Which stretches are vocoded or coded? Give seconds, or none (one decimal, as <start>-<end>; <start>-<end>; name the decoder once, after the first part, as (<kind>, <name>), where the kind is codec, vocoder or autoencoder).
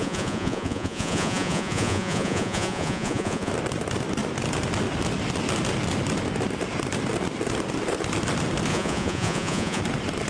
0.0-3.5 (vocoder, Vocos); 8.7-9.8